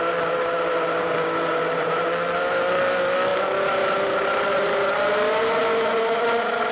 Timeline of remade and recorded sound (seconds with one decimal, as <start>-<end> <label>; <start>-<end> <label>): 0.0-1.0 recorded; 1.0-1.6 remade; 1.6-6.7 recorded